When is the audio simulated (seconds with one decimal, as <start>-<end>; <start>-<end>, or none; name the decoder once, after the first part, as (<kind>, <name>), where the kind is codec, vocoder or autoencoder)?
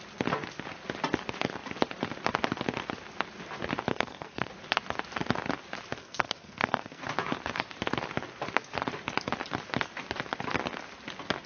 3.9-4.5 (codec, SNAC); 6.0-7.0